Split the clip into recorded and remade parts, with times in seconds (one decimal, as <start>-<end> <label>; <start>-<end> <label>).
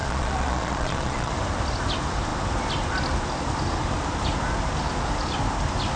0.0-1.3 remade; 1.3-6.0 recorded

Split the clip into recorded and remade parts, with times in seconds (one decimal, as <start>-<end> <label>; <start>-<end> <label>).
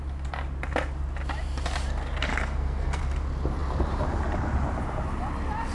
0.0-2.3 recorded; 2.3-3.0 remade; 3.0-5.7 recorded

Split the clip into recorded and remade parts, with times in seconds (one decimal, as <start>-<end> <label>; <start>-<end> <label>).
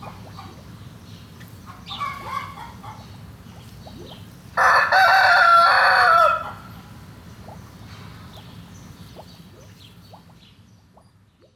0.0-11.6 recorded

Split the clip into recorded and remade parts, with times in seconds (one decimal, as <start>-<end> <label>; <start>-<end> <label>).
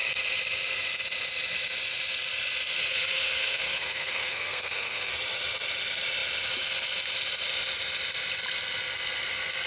0.0-2.9 recorded; 2.9-5.1 remade; 5.1-9.7 recorded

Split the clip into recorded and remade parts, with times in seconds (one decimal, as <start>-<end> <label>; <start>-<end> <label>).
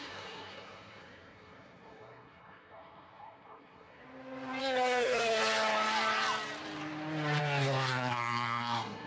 0.0-4.0 remade; 4.0-4.6 recorded; 4.6-5.4 remade; 5.4-7.4 recorded; 7.4-9.1 remade